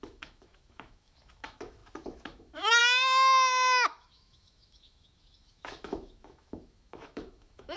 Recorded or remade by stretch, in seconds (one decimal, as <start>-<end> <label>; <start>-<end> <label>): 0.0-7.8 remade

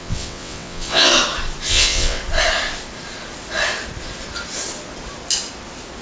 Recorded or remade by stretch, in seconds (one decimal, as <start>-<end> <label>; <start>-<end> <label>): 0.0-1.1 remade; 1.1-1.7 recorded; 1.7-2.2 remade; 2.2-6.0 recorded

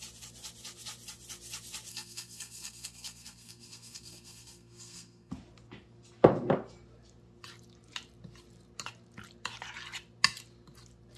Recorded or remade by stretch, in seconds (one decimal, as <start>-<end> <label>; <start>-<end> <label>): 0.0-1.9 recorded; 1.9-5.3 remade; 5.3-11.2 recorded

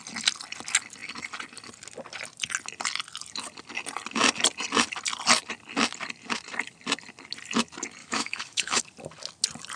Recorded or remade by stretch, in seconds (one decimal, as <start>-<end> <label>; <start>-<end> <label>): 0.0-8.0 recorded; 8.0-8.8 remade; 8.8-9.8 recorded

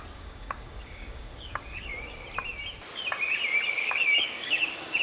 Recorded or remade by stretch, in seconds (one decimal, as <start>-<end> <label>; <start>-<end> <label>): 0.0-1.9 remade; 1.9-3.7 recorded; 3.7-5.0 remade

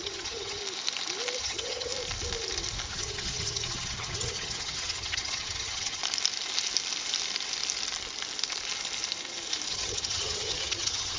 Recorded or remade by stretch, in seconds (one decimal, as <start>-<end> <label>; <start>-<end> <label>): 0.0-0.6 remade; 0.6-1.4 recorded; 1.4-1.9 remade; 1.9-2.9 recorded; 2.9-6.0 remade; 6.0-9.7 recorded; 9.7-11.2 remade

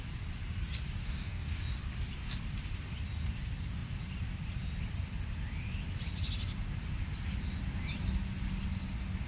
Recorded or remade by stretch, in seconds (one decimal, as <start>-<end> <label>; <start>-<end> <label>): 0.0-1.0 recorded; 1.0-1.6 remade; 1.6-9.3 recorded

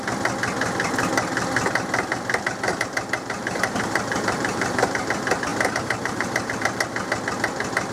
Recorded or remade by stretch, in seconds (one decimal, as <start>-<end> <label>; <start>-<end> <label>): 0.0-2.7 recorded; 2.7-5.1 remade; 5.1-5.5 recorded; 5.5-6.5 remade; 6.5-7.9 recorded